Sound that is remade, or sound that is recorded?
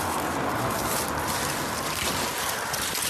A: recorded